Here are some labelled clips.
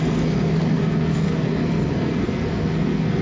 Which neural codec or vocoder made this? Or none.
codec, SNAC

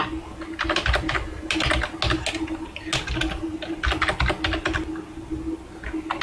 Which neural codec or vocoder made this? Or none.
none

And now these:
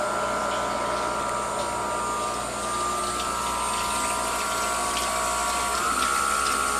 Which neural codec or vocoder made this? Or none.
none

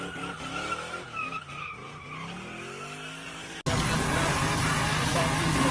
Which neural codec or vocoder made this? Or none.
none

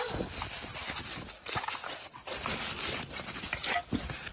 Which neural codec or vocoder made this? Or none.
none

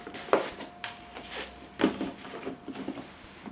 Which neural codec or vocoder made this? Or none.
none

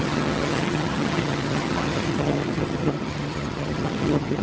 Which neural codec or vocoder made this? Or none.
vocoder, HiFi-GAN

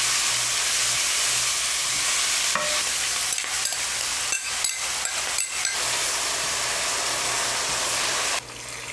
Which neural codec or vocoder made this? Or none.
none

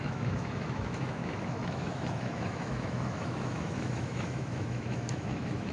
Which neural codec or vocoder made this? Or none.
autoencoder, DAC-VAE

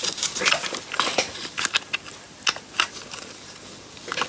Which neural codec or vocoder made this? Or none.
none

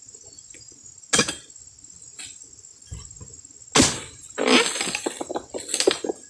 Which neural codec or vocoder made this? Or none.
none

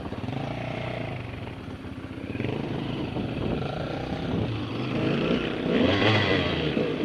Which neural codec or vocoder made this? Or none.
vocoder, BigVGAN v2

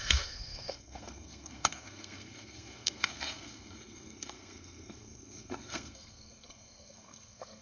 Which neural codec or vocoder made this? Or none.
codec, SNAC